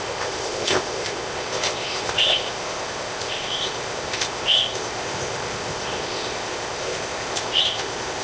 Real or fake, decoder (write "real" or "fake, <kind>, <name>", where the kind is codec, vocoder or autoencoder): fake, codec, ZipCodec